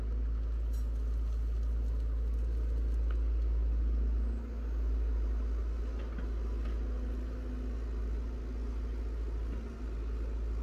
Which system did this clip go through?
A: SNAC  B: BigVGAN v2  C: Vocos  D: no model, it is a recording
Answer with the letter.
D